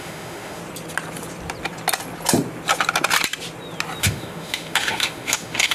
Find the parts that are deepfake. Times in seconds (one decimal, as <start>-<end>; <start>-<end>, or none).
0.0-0.6; 4.0-5.7